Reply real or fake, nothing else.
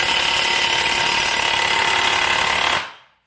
real